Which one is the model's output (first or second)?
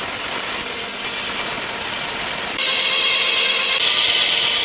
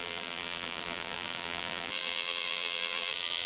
second